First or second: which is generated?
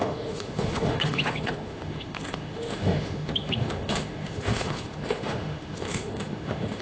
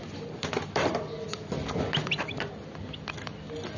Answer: first